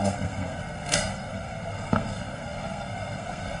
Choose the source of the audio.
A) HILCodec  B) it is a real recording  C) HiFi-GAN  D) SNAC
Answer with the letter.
D